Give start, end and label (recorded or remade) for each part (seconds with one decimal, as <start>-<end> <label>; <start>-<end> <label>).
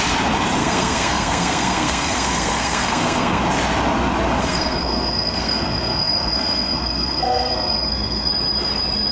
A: 0.0-0.6 recorded; 0.6-3.4 remade; 3.4-4.4 recorded; 4.4-8.3 remade; 8.3-9.1 recorded